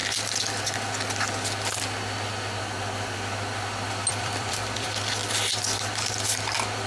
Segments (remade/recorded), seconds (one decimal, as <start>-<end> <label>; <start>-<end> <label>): 0.0-4.1 recorded; 4.1-5.2 remade; 5.2-6.1 recorded; 6.1-6.9 remade